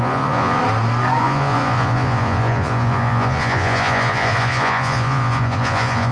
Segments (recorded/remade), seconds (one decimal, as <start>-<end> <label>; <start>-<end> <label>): 0.0-0.6 remade; 0.6-1.2 recorded; 1.2-6.1 remade